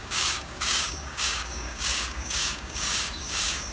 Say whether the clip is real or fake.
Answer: fake